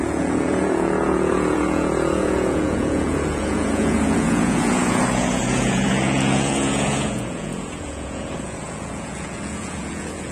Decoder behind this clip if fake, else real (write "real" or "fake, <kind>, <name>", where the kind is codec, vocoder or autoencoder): fake, vocoder, Vocos